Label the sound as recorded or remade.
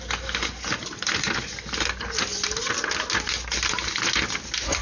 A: recorded